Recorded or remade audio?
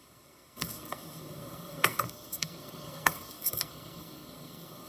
remade